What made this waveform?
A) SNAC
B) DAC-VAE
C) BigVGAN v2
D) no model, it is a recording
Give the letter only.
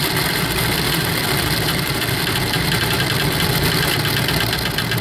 C